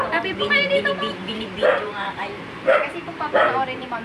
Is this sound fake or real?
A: fake